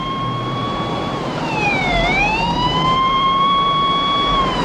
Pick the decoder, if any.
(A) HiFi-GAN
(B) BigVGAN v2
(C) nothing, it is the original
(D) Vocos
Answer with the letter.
B